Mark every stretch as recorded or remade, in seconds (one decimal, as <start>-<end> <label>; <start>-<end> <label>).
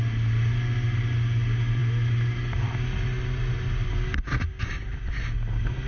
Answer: 0.0-5.9 recorded